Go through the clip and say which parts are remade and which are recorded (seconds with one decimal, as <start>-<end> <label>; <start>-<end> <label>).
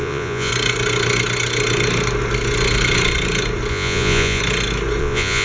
0.0-0.5 remade; 0.5-3.7 recorded; 3.7-4.4 remade; 4.4-5.0 recorded; 5.0-5.4 remade